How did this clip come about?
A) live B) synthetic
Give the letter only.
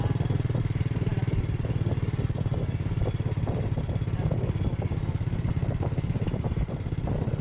A